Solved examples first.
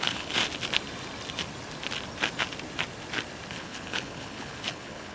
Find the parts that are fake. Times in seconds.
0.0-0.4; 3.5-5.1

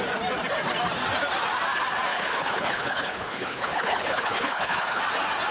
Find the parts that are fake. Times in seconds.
2.1-5.0

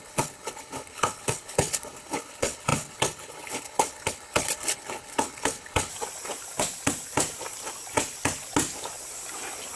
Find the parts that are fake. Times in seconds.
0.0-5.9

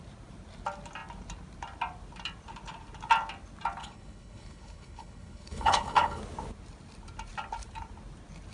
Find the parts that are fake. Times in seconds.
3.8-6.2

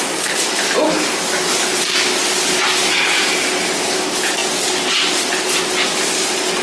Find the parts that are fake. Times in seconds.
none

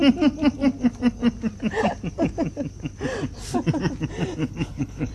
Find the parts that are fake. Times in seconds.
4.4-5.1

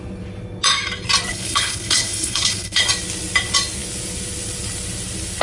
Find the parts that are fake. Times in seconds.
1.3-2.8

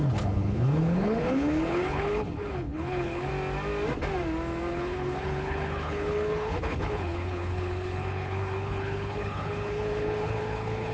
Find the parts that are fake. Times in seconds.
0.0-3.3; 4.7-10.9